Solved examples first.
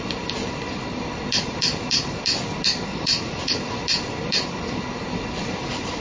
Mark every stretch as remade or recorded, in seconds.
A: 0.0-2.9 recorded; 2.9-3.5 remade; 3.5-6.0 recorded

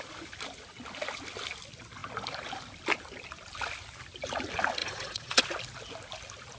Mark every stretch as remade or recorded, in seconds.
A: 0.0-4.8 recorded; 4.8-5.4 remade; 5.4-6.6 recorded

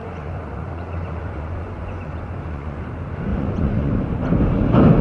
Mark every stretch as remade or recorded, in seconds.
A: 0.0-2.8 remade; 2.8-3.3 recorded; 3.3-3.9 remade; 3.9-5.0 recorded

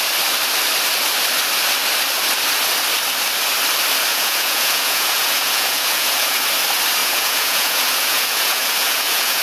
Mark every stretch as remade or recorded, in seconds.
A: 0.0-4.1 recorded; 4.1-6.4 remade; 6.4-7.0 recorded; 7.0-9.4 remade

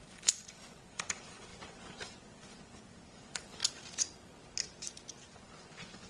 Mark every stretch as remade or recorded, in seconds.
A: 0.0-3.6 remade; 3.6-5.2 recorded; 5.2-6.1 remade

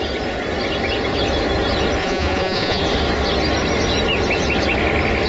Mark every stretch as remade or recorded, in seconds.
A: 0.0-2.0 recorded; 2.0-2.8 remade; 2.8-5.3 recorded

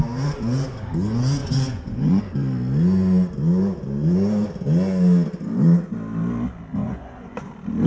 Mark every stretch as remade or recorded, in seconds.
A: 0.0-1.4 recorded; 1.4-2.2 remade; 2.2-6.8 recorded; 6.8-7.5 remade; 7.5-7.9 recorded